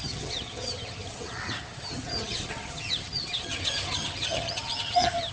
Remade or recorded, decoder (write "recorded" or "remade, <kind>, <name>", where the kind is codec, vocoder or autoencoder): remade, vocoder, HiFi-GAN